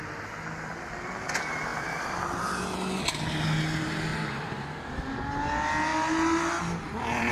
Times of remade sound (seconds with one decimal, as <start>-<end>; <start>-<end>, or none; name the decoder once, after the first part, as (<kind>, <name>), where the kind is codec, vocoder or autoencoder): 4.1-4.9 (vocoder, BigVGAN v2)